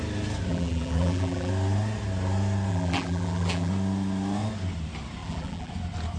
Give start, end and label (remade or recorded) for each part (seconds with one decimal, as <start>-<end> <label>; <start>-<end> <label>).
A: 0.0-0.5 recorded; 0.5-1.5 remade; 1.5-2.7 recorded; 2.7-3.7 remade; 3.7-5.2 recorded; 5.2-5.7 remade; 5.7-6.2 recorded